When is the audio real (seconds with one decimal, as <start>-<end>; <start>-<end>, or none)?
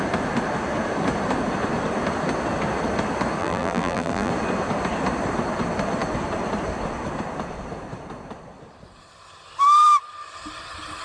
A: 0.0-3.4; 4.3-11.0